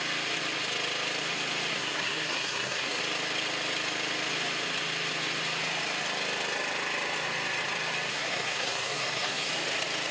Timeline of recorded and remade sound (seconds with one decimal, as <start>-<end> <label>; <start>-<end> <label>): 0.0-1.7 recorded; 1.7-3.0 remade; 3.0-8.1 recorded; 8.1-9.5 remade; 9.5-10.1 recorded